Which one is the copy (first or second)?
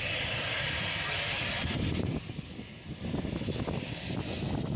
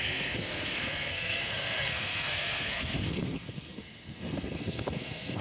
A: second